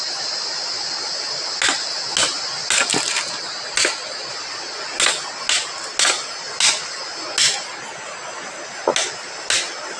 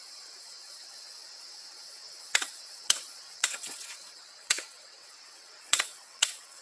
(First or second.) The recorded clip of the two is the first